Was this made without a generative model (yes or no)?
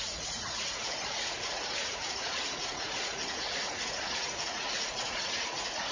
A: no